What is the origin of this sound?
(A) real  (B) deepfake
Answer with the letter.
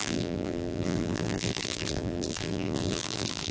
B